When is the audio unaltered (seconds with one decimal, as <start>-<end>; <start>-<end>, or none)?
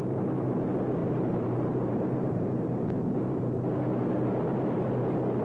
0.0-1.0; 4.2-5.4